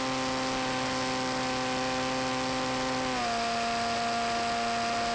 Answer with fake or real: real